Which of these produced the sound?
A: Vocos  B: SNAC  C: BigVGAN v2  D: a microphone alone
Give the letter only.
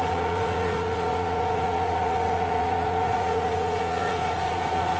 A